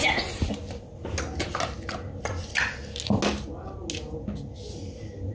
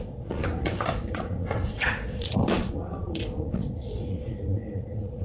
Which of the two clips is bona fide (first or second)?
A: first